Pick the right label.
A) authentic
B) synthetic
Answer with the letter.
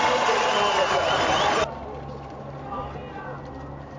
A